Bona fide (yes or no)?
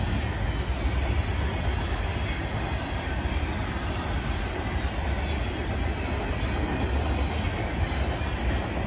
yes